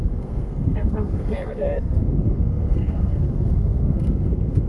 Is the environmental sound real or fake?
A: fake